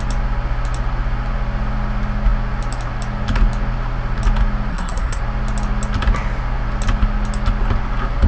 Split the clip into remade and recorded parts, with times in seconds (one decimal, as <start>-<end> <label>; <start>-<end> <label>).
0.0-4.7 recorded; 4.7-5.2 remade; 5.2-8.3 recorded